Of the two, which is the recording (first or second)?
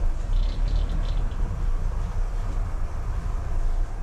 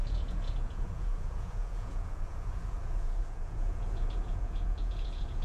first